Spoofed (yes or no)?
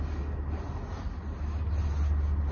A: no